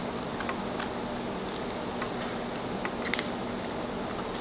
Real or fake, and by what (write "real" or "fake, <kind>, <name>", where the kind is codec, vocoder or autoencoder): real